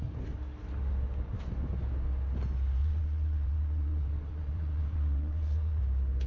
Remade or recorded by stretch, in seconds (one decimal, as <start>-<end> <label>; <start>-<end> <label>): 0.0-2.8 recorded; 2.8-5.8 remade; 5.8-6.3 recorded